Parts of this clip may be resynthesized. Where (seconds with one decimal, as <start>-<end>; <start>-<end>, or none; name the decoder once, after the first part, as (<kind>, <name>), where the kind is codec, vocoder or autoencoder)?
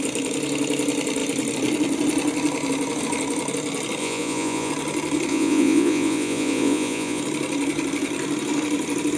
4.0-4.7 (vocoder, Vocos); 5.3-7.2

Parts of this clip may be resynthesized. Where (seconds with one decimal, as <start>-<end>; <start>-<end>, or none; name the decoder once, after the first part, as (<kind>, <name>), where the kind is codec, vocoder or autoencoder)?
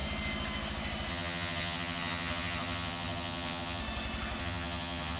1.1-3.8 (vocoder, HiFi-GAN); 4.4-5.2